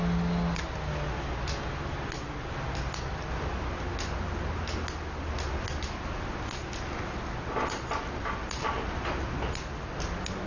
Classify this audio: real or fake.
real